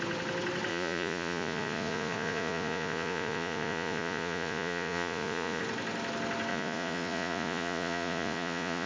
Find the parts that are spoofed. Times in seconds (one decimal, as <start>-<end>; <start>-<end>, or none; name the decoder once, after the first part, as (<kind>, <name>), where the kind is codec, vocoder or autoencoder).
0.7-5.6 (vocoder, Vocos); 6.5-8.9